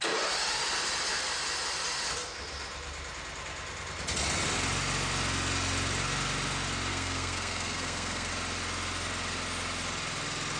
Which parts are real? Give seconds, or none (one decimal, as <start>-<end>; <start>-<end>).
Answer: 0.0-6.9; 8.3-10.6